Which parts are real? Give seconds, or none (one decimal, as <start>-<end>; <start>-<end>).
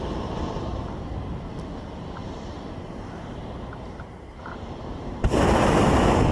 0.0-0.7; 1.5-2.2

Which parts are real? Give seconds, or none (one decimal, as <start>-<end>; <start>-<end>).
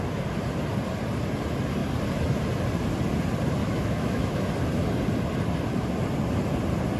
0.0-3.6; 4.5-7.0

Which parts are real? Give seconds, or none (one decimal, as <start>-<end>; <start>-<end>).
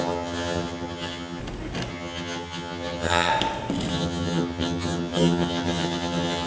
1.4-1.9; 3.3-3.9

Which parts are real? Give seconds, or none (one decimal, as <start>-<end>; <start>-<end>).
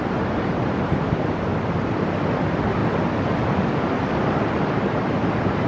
1.5-2.4; 2.8-4.0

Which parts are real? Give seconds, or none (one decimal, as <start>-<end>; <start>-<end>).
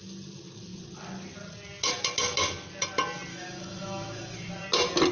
0.0-3.3; 4.5-5.1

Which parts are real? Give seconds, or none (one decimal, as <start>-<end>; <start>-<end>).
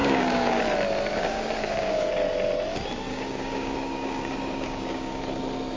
0.6-1.1; 2.1-3.1; 5.2-5.8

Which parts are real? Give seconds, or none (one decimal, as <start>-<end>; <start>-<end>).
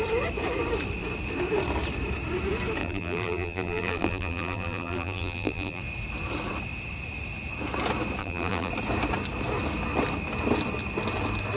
0.0-2.8; 5.8-8.2; 8.7-11.6